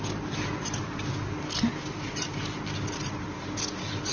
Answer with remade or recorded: recorded